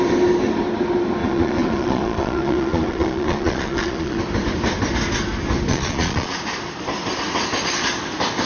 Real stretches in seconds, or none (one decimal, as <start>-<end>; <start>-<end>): 0.0-1.2; 4.2-5.7; 6.4-8.5